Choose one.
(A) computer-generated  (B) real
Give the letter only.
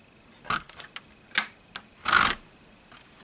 B